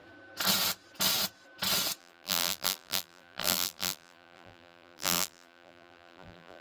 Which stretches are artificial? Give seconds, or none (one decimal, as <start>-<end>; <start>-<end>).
2.0-6.6